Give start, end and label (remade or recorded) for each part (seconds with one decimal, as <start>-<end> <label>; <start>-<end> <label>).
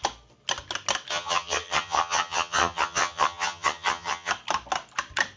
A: 0.0-1.1 recorded; 1.1-4.3 remade; 4.3-5.4 recorded